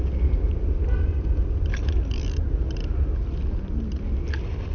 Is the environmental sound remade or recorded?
recorded